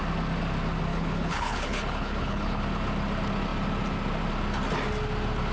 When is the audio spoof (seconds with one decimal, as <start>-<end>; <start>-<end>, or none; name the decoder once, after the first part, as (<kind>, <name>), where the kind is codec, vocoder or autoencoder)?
0.9-2.6 (codec, HILCodec)